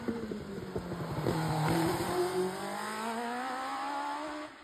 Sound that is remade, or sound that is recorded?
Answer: recorded